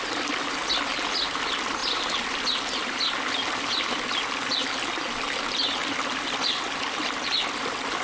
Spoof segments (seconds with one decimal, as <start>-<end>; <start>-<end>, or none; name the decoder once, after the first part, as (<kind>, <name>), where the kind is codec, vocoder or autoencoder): none